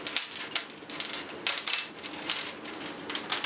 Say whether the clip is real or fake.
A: real